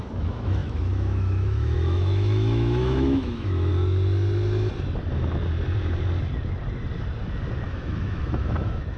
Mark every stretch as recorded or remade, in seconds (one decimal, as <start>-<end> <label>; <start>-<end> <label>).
0.0-3.7 remade; 3.7-7.7 recorded; 7.7-9.0 remade